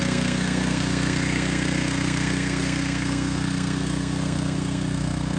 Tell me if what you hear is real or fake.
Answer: fake